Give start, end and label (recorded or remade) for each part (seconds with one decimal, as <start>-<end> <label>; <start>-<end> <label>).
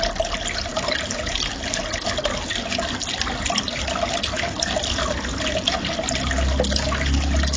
0.0-7.6 recorded